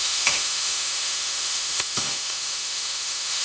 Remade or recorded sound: remade